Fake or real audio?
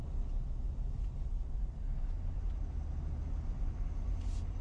real